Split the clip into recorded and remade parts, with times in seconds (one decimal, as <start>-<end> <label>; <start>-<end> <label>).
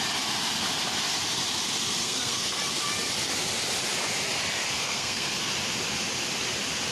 0.0-2.0 recorded; 2.0-2.6 remade; 2.6-4.8 recorded; 4.8-5.5 remade; 5.5-6.9 recorded